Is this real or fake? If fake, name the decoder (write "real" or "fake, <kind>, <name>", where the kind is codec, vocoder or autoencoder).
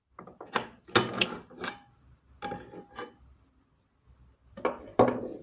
real